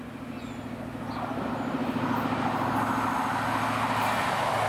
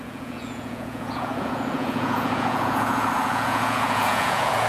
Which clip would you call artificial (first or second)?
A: second